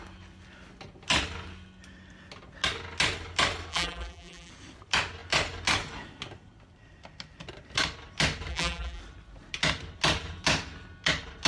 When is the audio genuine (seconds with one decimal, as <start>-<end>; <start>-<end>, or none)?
0.0-3.7; 4.5-8.5; 9.0-11.5